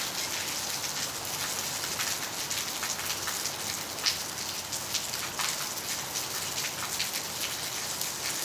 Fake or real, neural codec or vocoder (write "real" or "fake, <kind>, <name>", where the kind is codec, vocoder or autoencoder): real